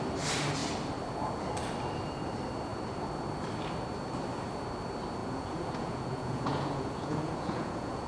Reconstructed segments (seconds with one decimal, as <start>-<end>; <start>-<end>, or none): 5.2-8.1